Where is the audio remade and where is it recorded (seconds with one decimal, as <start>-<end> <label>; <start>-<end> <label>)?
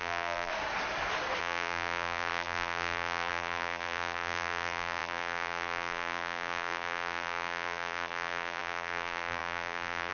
0.0-0.5 remade; 0.5-1.4 recorded; 1.4-10.1 remade